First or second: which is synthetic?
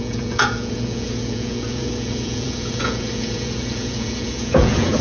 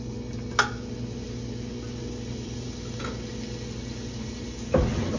first